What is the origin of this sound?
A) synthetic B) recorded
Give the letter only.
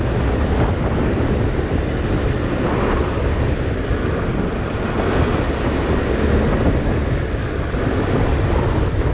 B